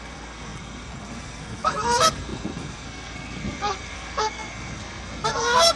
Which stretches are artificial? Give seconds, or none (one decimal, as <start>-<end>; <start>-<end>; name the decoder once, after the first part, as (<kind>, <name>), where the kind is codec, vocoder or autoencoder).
0.0-5.8 (codec, SNAC)